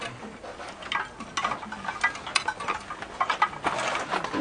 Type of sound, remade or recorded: recorded